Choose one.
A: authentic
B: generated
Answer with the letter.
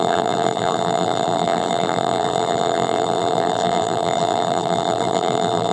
B